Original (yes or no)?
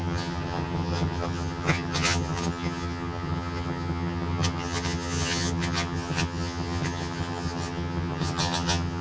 no